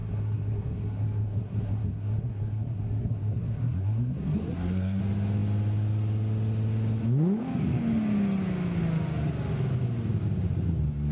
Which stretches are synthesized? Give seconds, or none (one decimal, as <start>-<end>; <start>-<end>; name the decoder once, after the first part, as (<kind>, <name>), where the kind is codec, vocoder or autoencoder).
0.0-5.0 (codec, SNAC)